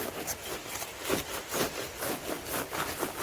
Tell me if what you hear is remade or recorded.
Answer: recorded